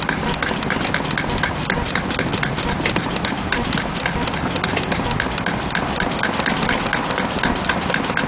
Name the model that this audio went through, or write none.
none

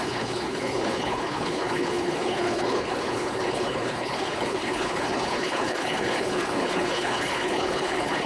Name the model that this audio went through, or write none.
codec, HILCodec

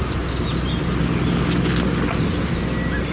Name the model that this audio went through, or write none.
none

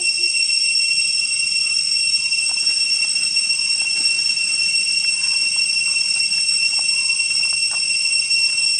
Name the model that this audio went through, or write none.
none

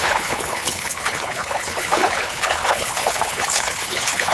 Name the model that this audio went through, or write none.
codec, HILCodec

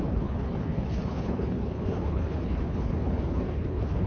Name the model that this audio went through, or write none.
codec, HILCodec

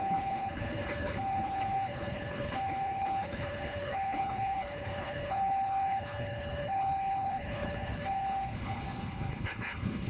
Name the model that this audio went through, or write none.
codec, HILCodec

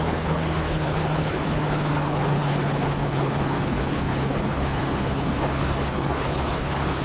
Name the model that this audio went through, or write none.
codec, HILCodec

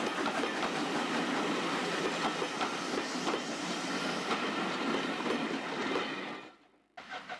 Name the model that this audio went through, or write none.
none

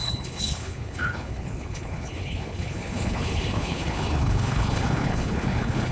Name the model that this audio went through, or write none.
codec, HILCodec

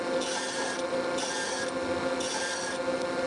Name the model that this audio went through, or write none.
none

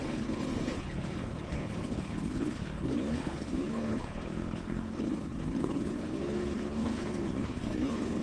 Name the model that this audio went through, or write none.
codec, HILCodec